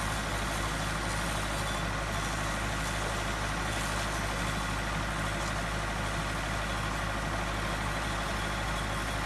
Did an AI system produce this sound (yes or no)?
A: no